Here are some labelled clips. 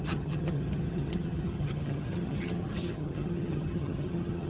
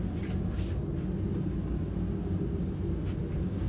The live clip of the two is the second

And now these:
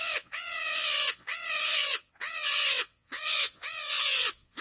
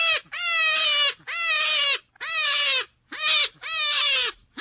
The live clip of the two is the second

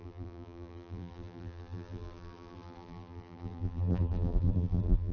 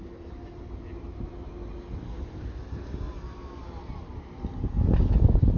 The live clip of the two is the second